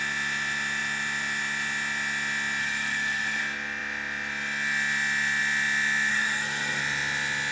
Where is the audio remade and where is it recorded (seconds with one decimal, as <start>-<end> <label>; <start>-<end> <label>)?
0.0-2.6 recorded; 2.6-3.4 remade; 3.4-6.1 recorded; 6.1-6.8 remade; 6.8-7.5 recorded

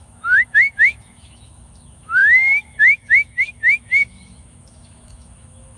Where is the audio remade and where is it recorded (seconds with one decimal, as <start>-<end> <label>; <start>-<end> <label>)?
0.0-5.8 remade

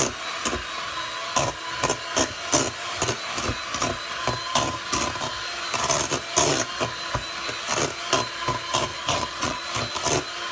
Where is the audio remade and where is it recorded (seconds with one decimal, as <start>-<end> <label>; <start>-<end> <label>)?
0.0-8.9 recorded; 8.9-9.7 remade; 9.7-10.5 recorded

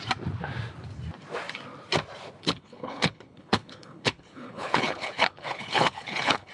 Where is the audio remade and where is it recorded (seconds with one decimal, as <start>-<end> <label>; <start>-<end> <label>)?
0.0-2.4 recorded; 2.4-6.5 remade

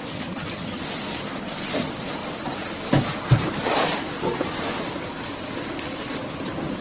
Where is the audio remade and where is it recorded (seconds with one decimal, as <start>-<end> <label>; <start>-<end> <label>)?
0.0-0.8 remade; 0.8-6.8 recorded